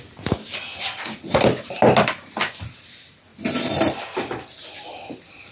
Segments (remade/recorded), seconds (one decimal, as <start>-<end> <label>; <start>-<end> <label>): 0.0-5.5 recorded